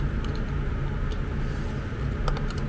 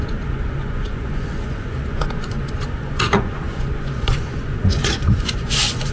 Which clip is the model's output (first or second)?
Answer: second